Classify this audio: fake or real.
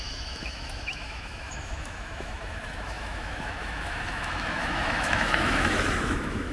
fake